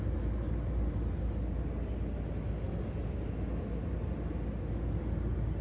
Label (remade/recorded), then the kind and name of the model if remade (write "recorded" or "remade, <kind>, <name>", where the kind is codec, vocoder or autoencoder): recorded